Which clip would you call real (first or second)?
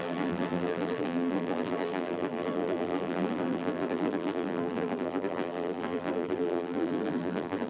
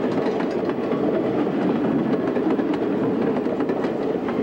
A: second